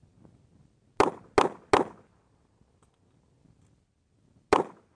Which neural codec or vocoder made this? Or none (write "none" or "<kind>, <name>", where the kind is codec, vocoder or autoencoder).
none